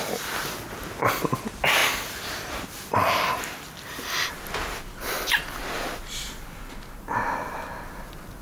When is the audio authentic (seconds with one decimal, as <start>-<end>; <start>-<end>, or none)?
0.0-8.4